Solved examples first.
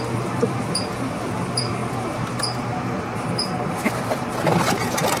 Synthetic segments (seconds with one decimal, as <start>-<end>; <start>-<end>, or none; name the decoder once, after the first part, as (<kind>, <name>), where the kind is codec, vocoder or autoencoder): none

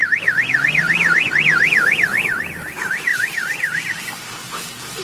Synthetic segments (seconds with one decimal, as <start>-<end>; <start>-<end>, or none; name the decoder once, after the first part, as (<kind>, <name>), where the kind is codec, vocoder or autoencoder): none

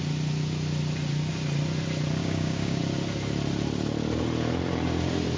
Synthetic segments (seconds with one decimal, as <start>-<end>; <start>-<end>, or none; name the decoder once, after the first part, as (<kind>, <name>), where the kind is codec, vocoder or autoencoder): 2.2-2.8 (codec, DAC)

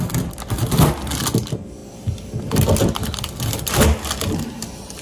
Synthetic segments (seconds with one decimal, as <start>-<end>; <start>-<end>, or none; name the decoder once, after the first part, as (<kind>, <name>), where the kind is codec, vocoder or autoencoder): none

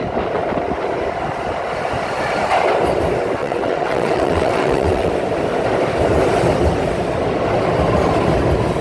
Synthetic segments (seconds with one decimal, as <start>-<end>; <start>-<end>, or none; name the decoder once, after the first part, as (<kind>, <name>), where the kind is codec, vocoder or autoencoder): 3.4-5.1 (vocoder, WaveNeXt)